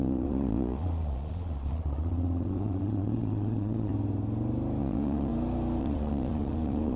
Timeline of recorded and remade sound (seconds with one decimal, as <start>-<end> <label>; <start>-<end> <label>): 0.0-3.9 remade; 3.9-4.8 recorded; 4.8-5.3 remade; 5.3-5.8 recorded; 5.8-7.0 remade